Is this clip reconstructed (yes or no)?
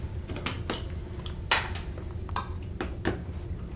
no